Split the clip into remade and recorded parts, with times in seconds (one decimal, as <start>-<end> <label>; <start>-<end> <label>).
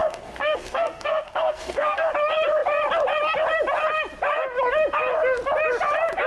0.0-2.1 remade; 2.1-6.3 recorded